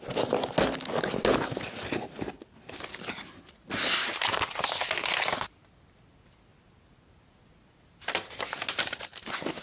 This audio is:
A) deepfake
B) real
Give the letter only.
B